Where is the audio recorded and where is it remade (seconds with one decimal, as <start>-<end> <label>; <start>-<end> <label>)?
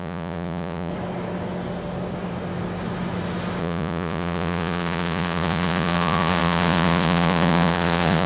0.0-0.9 remade; 0.9-3.6 recorded; 3.6-8.3 remade